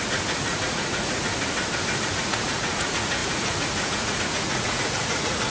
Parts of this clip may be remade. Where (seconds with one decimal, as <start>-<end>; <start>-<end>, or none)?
0.0-1.3; 2.0-5.5